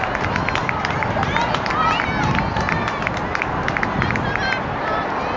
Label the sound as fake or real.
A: real